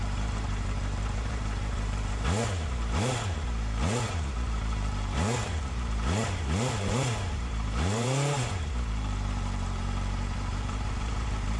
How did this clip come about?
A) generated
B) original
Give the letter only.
A